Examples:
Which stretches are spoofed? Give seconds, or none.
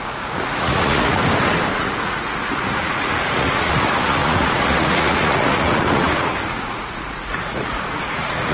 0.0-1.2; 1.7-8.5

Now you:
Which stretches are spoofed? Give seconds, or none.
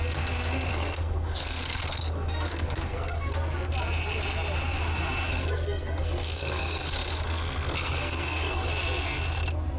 0.7-3.3; 5.3-8.7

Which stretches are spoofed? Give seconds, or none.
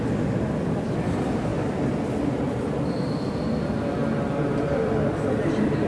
none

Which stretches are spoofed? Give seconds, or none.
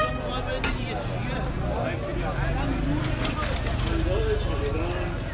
none